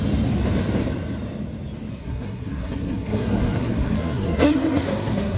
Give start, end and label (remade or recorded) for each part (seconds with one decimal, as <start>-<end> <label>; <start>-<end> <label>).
0.0-1.9 recorded; 1.9-5.4 remade